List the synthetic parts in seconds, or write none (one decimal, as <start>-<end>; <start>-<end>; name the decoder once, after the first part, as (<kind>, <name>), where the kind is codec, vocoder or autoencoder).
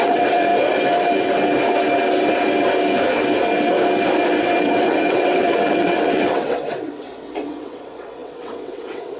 0.0-0.5 (vocoder, WaveNeXt); 4.6-9.2